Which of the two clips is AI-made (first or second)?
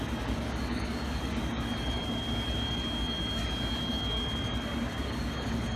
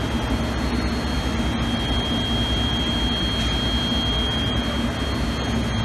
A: first